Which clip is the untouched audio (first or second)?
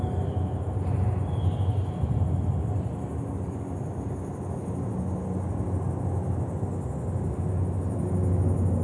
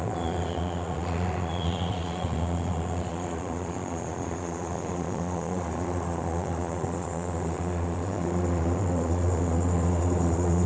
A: first